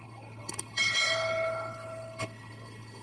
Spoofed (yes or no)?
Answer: yes